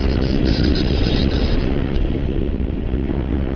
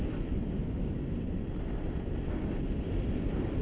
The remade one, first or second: first